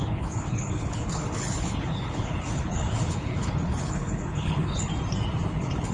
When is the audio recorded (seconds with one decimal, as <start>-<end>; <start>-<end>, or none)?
4.9-5.5